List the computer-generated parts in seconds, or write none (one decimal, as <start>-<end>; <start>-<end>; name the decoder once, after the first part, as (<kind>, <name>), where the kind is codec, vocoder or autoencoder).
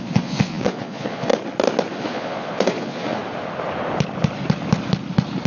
0.0-1.3 (vocoder, Vocos); 2.0-3.2